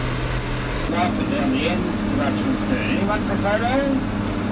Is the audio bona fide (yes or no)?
yes